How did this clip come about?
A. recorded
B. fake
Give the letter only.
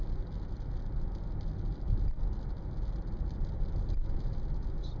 A